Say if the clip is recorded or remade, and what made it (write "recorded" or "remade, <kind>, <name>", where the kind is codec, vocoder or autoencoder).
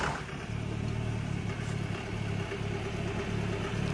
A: recorded